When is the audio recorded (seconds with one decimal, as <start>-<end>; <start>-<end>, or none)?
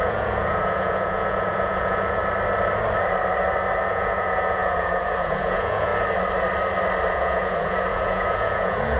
2.2-3.9; 5.9-7.1